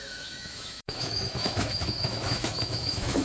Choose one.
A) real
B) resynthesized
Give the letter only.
B